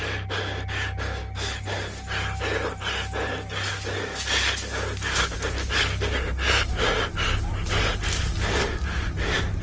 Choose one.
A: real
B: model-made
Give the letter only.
A